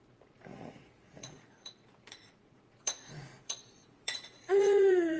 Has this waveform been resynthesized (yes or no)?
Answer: yes